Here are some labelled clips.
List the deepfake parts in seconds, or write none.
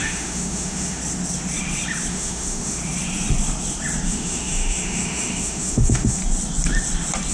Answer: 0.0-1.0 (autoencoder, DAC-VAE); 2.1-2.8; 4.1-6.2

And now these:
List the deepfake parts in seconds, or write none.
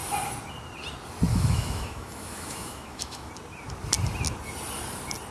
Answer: 1.3-3.3 (autoencoder, DAC-VAE)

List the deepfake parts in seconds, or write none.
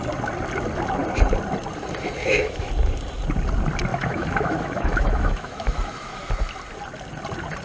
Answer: 2.2-2.7 (autoencoder, DAC-VAE); 3.9-6.2